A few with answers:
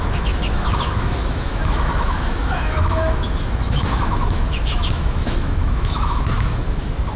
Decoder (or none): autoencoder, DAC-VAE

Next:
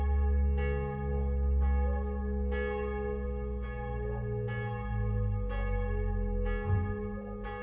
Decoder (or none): none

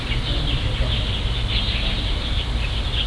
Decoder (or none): none